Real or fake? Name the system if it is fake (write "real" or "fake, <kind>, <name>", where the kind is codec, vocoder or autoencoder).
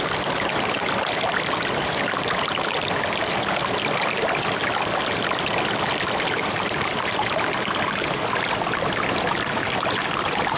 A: real